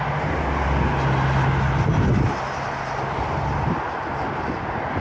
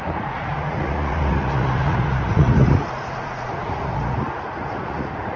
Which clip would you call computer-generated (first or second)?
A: second